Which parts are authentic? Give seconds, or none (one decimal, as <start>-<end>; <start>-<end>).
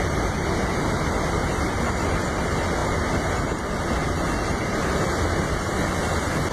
0.0-6.5